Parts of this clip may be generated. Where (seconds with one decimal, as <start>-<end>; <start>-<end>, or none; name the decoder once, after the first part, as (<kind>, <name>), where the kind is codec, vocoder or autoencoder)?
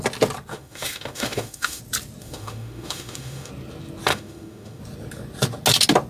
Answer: 0.5-1.8 (autoencoder, DAC-VAE); 2.2-3.5; 4.1-4.8